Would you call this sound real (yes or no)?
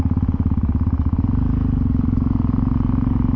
no